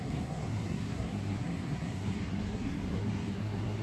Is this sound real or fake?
fake